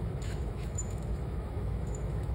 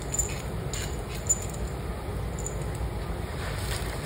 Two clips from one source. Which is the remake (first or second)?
first